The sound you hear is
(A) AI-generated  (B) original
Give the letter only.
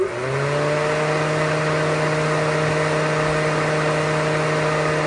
B